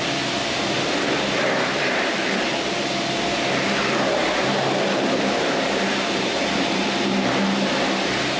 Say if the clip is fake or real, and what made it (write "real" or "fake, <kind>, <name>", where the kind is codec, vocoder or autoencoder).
fake, vocoder, BigVGAN v2